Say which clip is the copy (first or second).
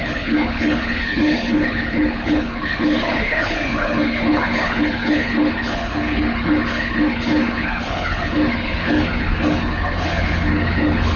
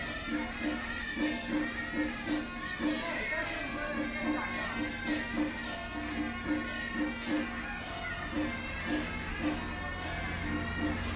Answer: first